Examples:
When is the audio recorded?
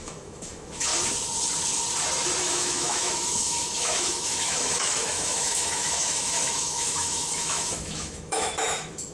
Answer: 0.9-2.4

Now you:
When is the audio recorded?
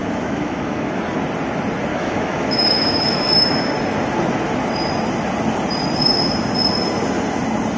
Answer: 1.0-1.9; 3.7-7.8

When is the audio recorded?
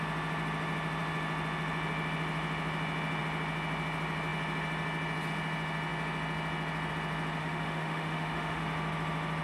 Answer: 0.0-7.4; 8.6-9.4